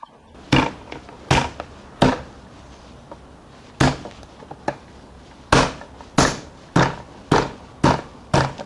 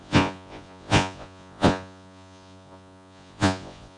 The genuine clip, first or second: first